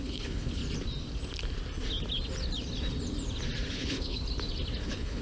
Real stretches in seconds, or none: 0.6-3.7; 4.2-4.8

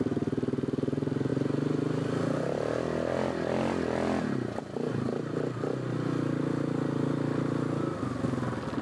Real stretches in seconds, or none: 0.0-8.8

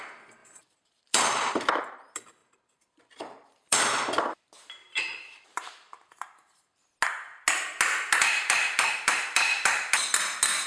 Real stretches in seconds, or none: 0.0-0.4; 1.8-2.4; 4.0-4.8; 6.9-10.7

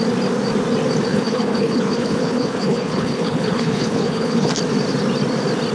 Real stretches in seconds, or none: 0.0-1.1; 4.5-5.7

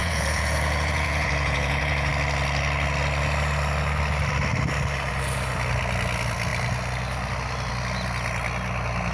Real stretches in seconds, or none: 2.1-9.1

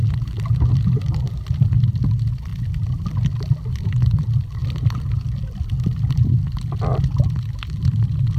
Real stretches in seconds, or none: 0.0-8.4

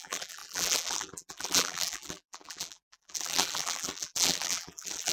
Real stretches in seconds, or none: none